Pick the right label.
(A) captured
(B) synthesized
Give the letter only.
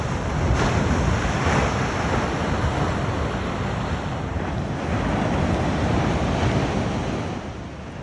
A